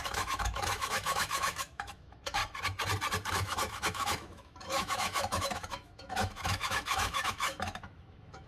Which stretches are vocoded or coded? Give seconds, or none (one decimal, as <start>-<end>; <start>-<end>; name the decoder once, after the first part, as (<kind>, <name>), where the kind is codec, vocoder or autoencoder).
0.0-2.4 (autoencoder, DAC-VAE); 3.3-8.5